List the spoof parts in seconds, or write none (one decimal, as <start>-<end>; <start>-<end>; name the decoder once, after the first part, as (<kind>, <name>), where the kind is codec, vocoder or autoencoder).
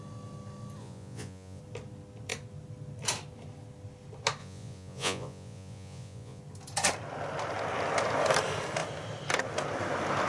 0.8-1.6 (vocoder, Vocos); 4.4-6.4